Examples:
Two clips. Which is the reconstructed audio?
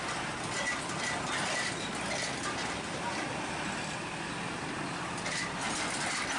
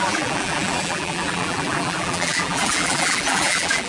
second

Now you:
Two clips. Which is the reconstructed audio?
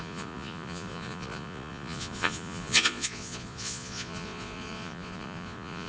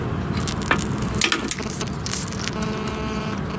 first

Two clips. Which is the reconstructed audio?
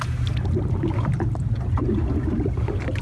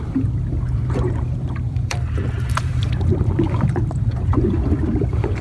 second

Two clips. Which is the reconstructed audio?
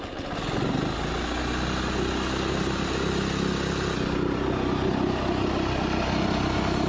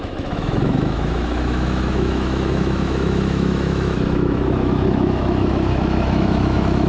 second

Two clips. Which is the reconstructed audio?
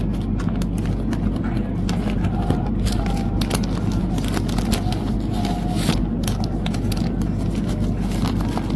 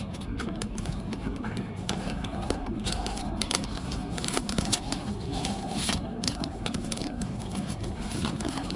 second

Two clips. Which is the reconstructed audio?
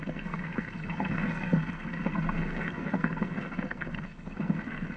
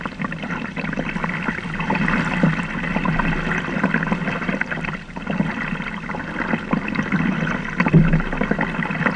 first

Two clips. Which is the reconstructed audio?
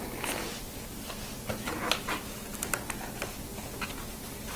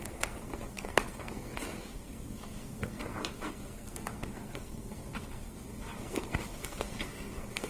second